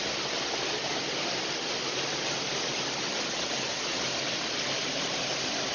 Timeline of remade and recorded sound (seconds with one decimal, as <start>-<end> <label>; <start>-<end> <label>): 0.0-5.7 recorded